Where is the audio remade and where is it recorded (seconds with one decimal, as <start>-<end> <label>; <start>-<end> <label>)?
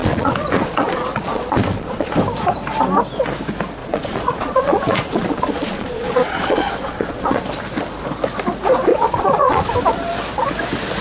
0.0-2.1 remade; 2.1-3.8 recorded; 3.8-7.4 remade; 7.4-8.9 recorded; 8.9-9.7 remade; 9.7-11.0 recorded